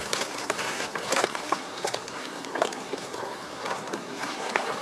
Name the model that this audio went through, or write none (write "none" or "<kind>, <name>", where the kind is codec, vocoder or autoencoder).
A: codec, SNAC